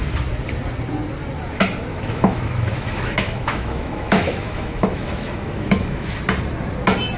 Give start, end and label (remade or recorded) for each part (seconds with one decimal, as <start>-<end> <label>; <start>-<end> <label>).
0.0-1.9 recorded; 1.9-6.2 remade; 6.2-7.2 recorded